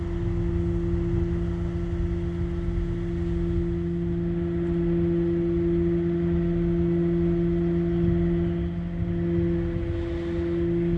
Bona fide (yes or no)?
yes